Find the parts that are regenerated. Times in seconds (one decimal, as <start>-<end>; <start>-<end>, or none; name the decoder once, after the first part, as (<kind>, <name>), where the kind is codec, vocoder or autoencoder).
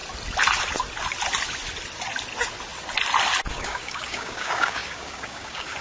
3.5-5.8 (codec, DAC)